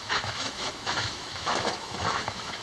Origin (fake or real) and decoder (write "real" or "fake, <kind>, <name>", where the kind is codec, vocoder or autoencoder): fake, autoencoder, DAC-VAE